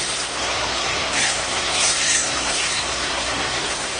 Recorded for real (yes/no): no